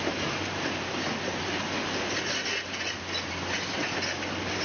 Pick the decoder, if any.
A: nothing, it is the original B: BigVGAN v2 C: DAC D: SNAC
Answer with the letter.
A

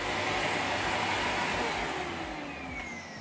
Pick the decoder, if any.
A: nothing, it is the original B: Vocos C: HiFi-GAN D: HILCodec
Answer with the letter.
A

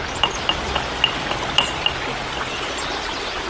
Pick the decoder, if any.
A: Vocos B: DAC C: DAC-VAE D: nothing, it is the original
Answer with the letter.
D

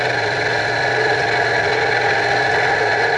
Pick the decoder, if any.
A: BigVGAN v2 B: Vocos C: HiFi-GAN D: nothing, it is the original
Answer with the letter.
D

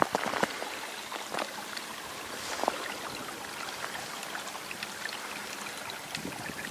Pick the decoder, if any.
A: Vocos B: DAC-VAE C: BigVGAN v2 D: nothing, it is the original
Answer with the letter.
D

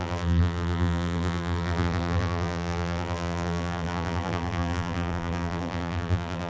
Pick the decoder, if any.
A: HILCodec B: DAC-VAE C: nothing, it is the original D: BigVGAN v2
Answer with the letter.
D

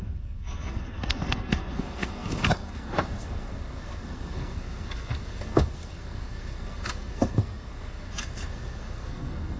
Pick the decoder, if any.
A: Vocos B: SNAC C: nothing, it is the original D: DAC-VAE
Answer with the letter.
B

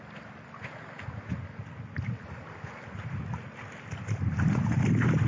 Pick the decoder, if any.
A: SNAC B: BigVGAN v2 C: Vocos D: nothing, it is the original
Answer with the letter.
D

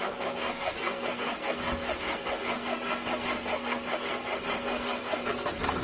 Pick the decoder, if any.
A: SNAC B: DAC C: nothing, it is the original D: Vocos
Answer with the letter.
A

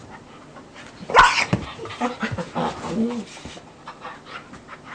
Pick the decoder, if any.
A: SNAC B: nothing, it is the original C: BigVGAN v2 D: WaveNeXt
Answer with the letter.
B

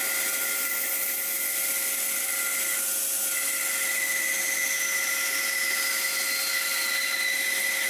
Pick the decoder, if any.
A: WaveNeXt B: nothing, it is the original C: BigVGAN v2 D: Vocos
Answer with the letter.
B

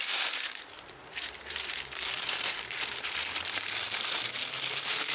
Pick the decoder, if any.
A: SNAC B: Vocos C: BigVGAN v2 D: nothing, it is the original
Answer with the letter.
C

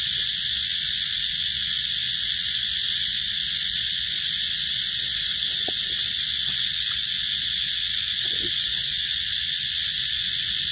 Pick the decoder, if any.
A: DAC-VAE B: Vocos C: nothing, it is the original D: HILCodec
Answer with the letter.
B